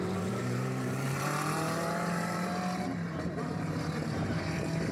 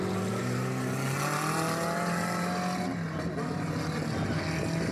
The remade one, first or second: first